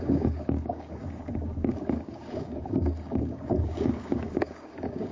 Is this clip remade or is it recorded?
remade